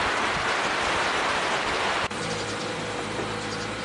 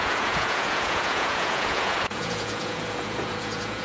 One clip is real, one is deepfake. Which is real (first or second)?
first